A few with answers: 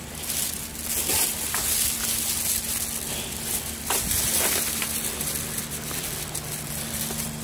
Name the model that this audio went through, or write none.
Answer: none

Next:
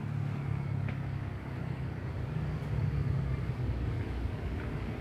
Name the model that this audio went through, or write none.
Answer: codec, DAC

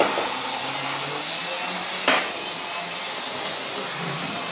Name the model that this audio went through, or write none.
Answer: none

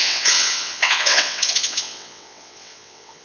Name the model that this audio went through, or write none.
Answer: vocoder, WaveNeXt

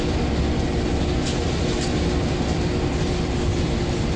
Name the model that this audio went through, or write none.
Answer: none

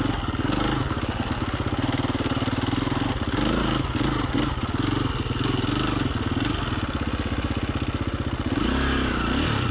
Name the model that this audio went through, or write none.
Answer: none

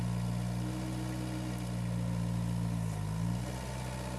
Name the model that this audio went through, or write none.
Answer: none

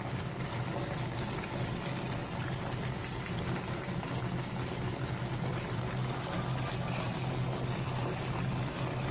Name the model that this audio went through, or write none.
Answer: none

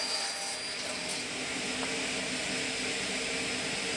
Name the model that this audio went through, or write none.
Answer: none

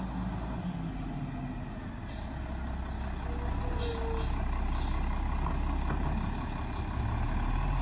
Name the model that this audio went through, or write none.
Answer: none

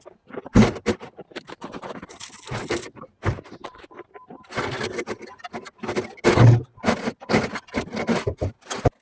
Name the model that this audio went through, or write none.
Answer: none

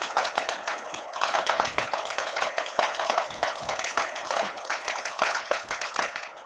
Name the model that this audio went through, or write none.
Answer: codec, HILCodec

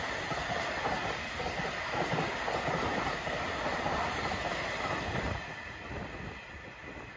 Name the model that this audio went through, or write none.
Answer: none